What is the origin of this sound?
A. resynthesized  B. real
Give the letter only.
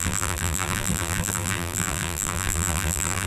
A